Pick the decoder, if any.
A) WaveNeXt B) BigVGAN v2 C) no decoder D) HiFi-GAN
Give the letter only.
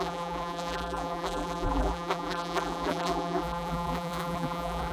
B